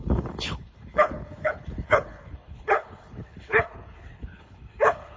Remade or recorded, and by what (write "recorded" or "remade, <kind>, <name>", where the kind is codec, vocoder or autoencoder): remade, codec, HILCodec